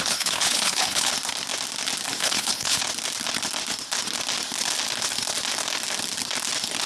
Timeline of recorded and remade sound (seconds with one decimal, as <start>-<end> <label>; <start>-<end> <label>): 0.0-1.1 remade; 1.1-2.2 recorded; 2.2-2.8 remade; 2.8-6.9 recorded